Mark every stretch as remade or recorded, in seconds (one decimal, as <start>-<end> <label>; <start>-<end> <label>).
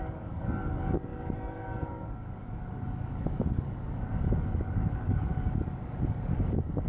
0.0-6.9 remade